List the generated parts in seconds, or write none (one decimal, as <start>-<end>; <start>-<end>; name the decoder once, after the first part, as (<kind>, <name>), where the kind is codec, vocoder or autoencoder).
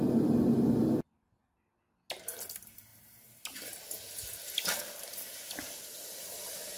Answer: none